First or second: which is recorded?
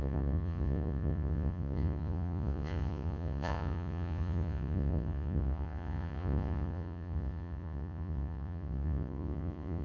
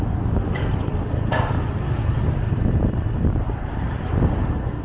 second